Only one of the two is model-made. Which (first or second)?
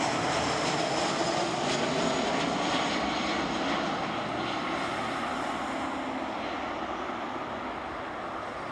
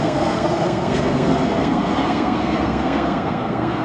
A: second